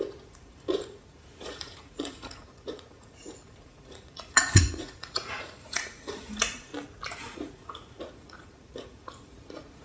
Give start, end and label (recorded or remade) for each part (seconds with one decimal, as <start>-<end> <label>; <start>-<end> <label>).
0.0-6.7 remade; 6.7-7.2 recorded; 7.2-9.8 remade